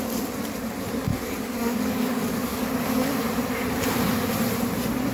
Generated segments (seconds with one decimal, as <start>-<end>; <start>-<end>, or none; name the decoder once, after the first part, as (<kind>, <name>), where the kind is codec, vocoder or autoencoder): 1.1-2.7 (codec, DAC)